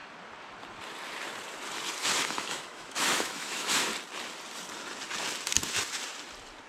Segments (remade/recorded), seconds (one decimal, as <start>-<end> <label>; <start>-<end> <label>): 0.0-2.2 recorded; 2.2-3.9 remade; 3.9-6.7 recorded

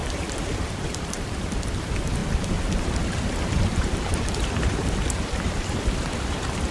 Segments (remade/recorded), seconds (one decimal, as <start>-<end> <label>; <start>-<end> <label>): 0.0-6.7 recorded

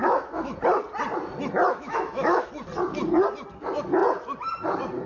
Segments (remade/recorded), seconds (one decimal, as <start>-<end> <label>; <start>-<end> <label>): 0.0-0.5 remade; 0.5-1.7 recorded; 1.7-2.5 remade; 2.5-5.1 recorded

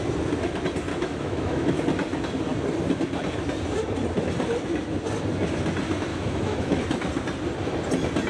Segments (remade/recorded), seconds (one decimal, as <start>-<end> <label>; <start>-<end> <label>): 0.0-0.9 recorded; 0.9-1.8 remade; 1.8-6.1 recorded; 6.1-6.8 remade; 6.8-8.3 recorded

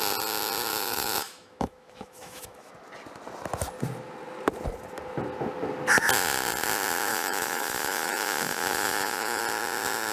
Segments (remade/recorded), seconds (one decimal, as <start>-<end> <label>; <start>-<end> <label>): 0.0-0.7 recorded; 0.7-2.7 remade; 2.7-7.1 recorded; 7.1-9.4 remade; 9.4-10.1 recorded

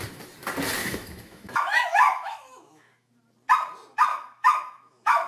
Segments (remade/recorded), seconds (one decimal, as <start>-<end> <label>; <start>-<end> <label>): 0.0-0.8 recorded; 0.8-3.1 remade; 3.1-4.1 recorded; 4.1-5.3 remade

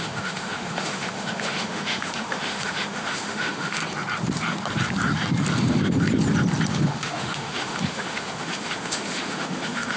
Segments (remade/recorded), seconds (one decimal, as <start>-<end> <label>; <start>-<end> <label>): 0.0-3.8 remade; 3.8-6.7 recorded; 6.7-10.0 remade

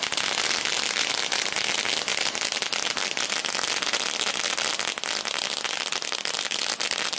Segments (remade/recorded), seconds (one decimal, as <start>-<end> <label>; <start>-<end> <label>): 0.0-7.2 recorded